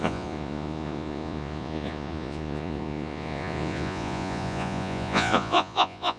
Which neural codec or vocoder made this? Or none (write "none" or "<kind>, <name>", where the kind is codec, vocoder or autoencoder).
vocoder, Vocos